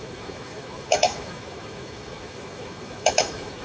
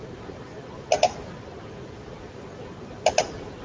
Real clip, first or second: second